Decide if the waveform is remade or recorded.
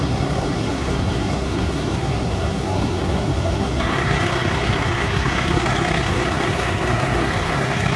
remade